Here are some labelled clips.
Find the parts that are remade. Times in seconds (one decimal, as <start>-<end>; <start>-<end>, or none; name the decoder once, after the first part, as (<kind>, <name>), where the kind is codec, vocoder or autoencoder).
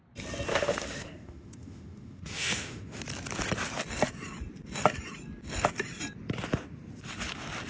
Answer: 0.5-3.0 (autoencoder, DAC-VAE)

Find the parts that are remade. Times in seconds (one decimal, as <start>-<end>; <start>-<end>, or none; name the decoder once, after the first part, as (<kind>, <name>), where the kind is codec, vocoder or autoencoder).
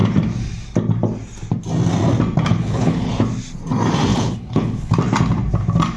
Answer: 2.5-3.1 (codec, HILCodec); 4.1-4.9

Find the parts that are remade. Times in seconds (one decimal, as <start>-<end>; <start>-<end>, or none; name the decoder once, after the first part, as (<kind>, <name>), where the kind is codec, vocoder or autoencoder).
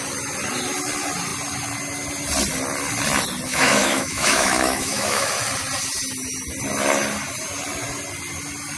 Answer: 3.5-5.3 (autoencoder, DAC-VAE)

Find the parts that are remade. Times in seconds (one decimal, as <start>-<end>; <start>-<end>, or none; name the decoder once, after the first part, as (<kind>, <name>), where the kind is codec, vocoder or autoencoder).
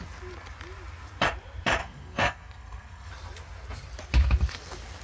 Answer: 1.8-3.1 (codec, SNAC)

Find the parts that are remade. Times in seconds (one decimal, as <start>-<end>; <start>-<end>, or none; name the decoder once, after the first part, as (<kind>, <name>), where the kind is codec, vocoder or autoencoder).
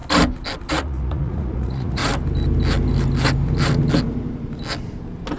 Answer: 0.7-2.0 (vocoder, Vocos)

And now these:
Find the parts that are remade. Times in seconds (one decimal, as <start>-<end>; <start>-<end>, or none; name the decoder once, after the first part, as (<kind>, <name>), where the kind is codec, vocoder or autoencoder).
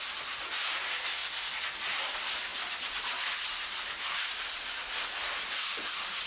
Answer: none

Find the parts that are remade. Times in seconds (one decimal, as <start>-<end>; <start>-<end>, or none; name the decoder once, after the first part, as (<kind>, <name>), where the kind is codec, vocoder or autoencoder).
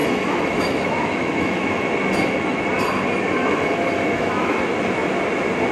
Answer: 0.0-1.9 (autoencoder, DAC-VAE); 3.4-4.6